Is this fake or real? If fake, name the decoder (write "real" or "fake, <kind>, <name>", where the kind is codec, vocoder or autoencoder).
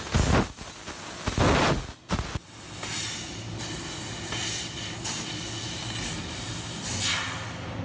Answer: real